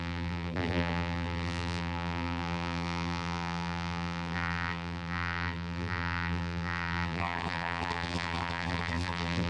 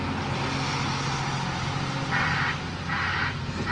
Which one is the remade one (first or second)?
first